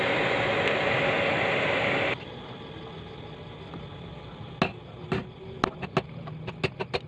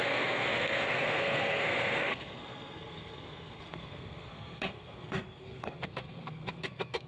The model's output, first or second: second